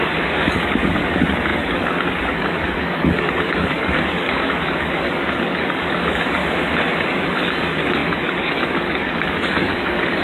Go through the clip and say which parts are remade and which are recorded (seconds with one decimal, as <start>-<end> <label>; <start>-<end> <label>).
0.0-6.4 remade; 6.4-7.0 recorded; 7.0-10.2 remade